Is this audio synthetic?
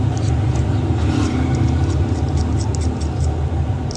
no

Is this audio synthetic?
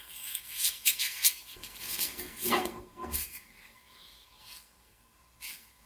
yes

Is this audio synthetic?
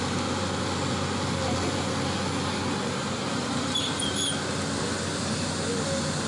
no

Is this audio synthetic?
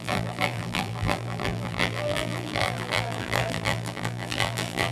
yes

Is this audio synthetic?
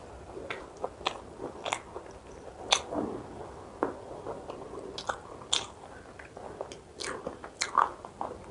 no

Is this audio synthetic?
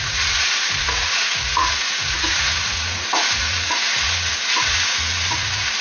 yes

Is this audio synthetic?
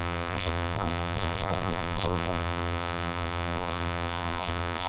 yes